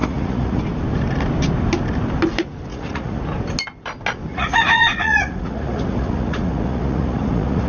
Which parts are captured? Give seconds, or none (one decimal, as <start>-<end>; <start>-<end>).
0.6-2.7; 3.2-4.3